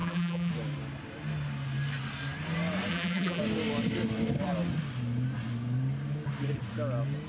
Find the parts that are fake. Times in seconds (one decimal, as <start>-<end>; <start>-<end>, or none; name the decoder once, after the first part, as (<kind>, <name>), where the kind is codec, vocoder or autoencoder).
0.0-0.5 (vocoder, BigVGAN v2); 2.9-3.4